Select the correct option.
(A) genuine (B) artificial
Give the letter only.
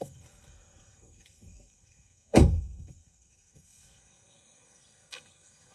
B